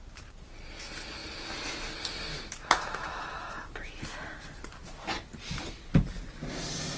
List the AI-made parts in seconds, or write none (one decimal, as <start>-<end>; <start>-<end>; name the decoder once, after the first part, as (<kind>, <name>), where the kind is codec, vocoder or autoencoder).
2.3-3.5 (autoencoder, DAC-VAE)